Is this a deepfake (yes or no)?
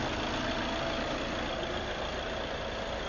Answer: no